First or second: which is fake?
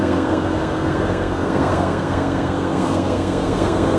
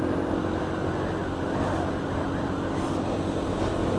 first